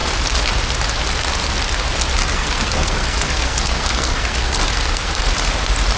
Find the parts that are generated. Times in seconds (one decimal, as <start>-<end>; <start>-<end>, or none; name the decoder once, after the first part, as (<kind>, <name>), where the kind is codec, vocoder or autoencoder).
2.2-5.2 (codec, SNAC)